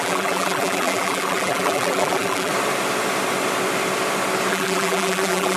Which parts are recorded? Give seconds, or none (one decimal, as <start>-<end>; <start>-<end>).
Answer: 2.5-4.5